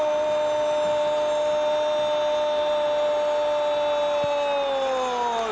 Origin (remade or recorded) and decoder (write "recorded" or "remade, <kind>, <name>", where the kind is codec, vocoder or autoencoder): recorded